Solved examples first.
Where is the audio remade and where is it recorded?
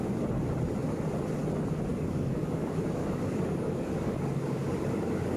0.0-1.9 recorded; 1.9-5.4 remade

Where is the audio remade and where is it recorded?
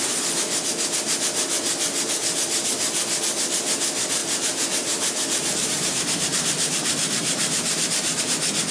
0.0-4.2 recorded; 4.2-8.2 remade; 8.2-8.7 recorded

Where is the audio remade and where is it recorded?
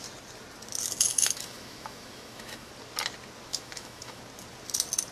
0.0-1.1 recorded; 1.1-2.7 remade; 2.7-3.5 recorded; 3.5-4.2 remade; 4.2-5.1 recorded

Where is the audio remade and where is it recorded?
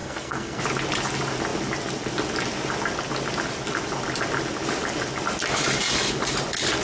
0.0-0.6 remade; 0.6-6.8 recorded